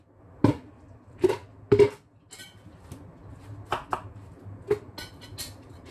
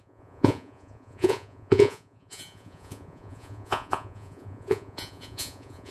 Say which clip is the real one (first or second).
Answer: first